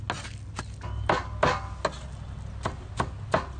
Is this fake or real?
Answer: real